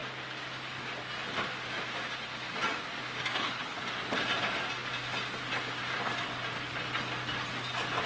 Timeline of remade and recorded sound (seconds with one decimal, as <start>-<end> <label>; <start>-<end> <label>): 0.0-3.3 recorded; 3.3-3.8 remade; 3.8-8.1 recorded